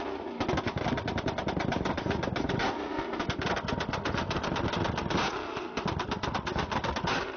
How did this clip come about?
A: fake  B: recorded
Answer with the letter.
B